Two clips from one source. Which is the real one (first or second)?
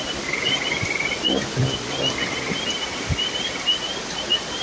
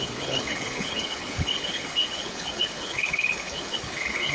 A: first